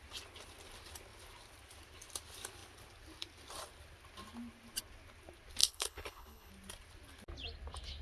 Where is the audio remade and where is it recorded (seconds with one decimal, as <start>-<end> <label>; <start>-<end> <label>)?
0.0-5.6 recorded; 5.6-6.5 remade; 6.5-8.0 recorded